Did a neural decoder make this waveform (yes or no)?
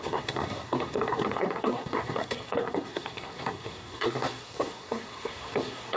yes